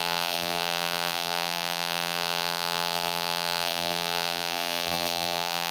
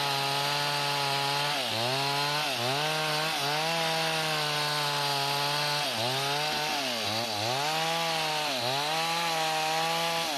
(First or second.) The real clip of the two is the second